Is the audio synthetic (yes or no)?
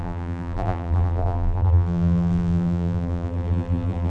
yes